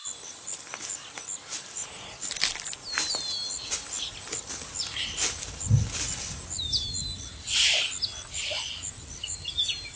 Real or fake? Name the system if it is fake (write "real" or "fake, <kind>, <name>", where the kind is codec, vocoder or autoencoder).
real